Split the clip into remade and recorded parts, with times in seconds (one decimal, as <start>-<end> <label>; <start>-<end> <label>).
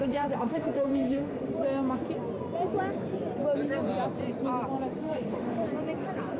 0.0-1.5 remade; 1.5-4.9 recorded; 4.9-5.6 remade; 5.6-6.4 recorded